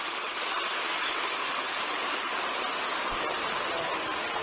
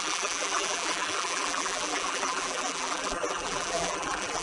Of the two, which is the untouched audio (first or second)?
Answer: first